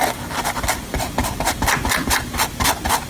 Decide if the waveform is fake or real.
real